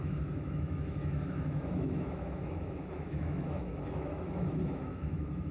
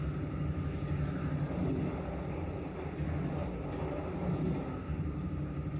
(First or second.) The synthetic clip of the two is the first